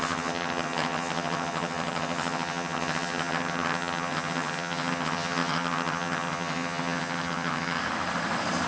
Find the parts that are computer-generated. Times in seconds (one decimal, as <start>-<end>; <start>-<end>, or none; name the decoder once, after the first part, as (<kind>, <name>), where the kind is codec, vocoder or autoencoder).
0.0-7.8 (vocoder, HiFi-GAN)